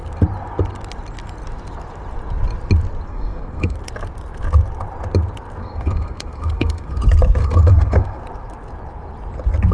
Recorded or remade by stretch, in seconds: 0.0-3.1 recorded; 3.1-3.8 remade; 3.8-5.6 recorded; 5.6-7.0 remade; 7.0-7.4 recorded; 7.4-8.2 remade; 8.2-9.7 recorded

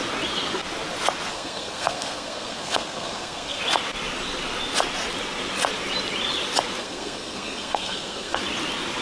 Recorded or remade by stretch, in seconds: 0.0-1.3 recorded; 1.3-3.6 remade; 3.6-6.8 recorded; 6.8-8.4 remade; 8.4-9.0 recorded

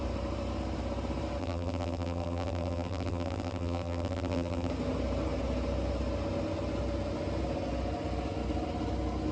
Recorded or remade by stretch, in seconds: 0.0-1.4 recorded; 1.4-4.7 remade; 4.7-9.3 recorded

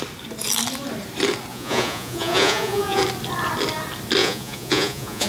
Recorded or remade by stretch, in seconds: 0.0-1.5 recorded; 1.5-3.0 remade; 3.0-4.2 recorded; 4.2-5.3 remade